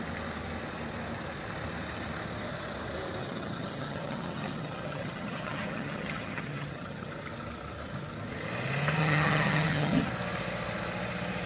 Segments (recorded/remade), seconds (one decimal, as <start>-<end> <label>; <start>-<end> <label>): 0.0-3.2 recorded; 3.2-7.1 remade; 7.1-9.0 recorded; 9.0-10.1 remade; 10.1-11.5 recorded